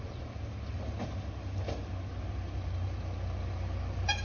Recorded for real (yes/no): yes